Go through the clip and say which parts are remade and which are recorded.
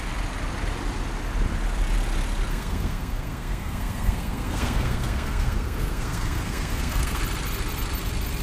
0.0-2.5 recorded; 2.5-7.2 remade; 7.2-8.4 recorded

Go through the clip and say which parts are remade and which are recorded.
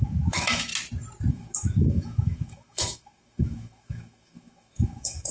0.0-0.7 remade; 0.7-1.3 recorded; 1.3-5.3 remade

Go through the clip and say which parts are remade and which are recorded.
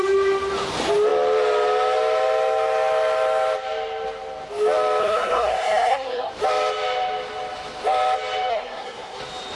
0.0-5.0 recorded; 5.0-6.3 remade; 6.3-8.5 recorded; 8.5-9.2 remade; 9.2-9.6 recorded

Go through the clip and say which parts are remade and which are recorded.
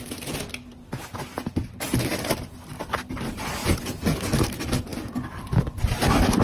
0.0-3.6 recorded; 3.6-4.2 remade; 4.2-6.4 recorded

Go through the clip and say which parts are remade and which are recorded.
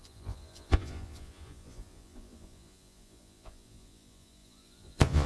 0.0-5.3 remade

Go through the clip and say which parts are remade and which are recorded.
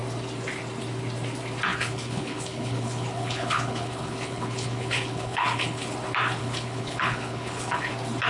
0.0-1.7 recorded; 1.7-5.9 remade; 5.9-6.4 recorded; 6.4-7.9 remade; 7.9-8.3 recorded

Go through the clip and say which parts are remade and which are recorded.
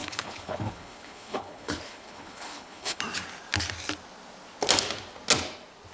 0.0-3.0 remade; 3.0-5.9 recorded